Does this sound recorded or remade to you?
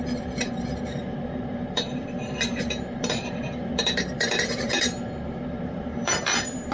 remade